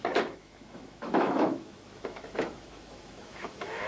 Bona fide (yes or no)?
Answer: no